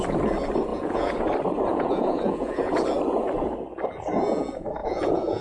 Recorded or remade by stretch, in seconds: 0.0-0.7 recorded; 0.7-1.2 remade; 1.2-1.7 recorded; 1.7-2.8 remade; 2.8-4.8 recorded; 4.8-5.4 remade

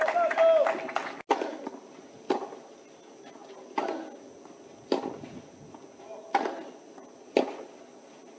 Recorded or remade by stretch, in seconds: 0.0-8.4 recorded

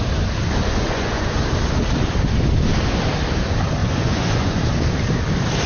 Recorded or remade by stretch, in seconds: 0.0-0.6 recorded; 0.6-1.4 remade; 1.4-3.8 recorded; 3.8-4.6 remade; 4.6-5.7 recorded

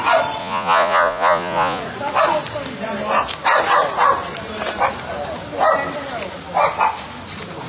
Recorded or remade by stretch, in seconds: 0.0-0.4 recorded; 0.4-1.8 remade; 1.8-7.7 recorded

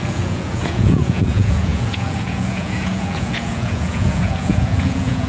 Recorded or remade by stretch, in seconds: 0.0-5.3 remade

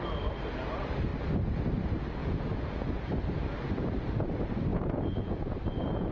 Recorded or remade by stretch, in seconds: 0.0-2.2 recorded; 2.2-3.1 remade; 3.1-4.7 recorded; 4.7-5.4 remade; 5.4-6.1 recorded

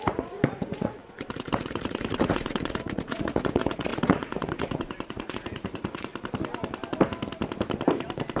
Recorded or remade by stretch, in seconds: 0.0-6.1 remade; 6.1-8.4 recorded

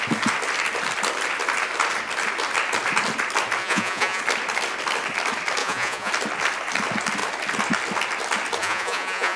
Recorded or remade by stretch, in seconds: 0.0-3.6 recorded; 3.6-4.2 remade; 4.2-5.6 recorded; 5.6-6.1 remade; 6.1-8.6 recorded; 8.6-9.4 remade